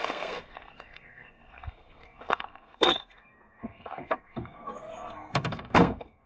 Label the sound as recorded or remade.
remade